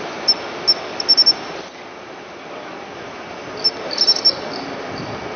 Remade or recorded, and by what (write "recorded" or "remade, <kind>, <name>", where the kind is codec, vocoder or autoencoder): recorded